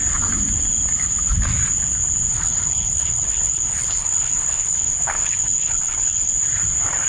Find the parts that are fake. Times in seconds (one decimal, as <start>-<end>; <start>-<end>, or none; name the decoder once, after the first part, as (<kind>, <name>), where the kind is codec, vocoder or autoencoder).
2.3-6.3 (codec, HILCodec)